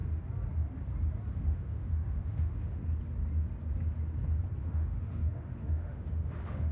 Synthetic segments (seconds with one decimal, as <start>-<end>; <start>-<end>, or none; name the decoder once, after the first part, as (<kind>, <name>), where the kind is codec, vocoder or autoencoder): 1.3-2.8 (autoencoder, DAC-VAE); 4.6-6.7